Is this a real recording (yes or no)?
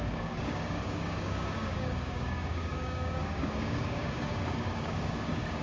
no